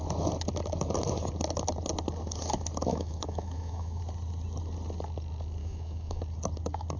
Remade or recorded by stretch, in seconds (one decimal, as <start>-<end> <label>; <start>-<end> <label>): 0.0-2.9 recorded; 2.9-4.0 remade; 4.0-5.6 recorded; 5.6-6.2 remade; 6.2-7.0 recorded